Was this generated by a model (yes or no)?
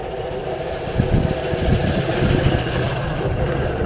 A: yes